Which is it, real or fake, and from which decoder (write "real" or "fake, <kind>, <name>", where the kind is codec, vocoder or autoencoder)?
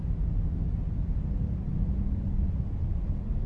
real